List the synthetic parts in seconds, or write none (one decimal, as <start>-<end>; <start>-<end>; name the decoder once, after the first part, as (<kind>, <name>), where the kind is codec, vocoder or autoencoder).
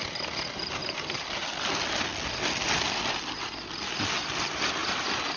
none